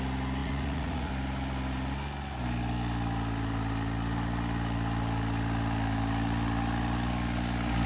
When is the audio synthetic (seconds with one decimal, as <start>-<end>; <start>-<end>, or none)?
0.4-1.1